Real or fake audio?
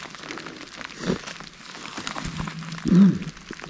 real